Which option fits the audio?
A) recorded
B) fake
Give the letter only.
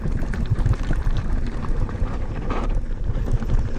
B